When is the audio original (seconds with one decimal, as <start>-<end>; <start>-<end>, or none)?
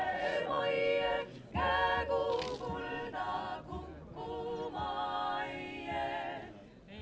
0.6-7.0